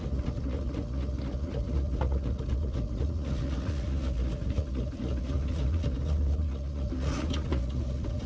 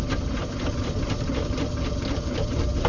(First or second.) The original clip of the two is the second